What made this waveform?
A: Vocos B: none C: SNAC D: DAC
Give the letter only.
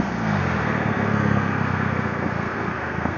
C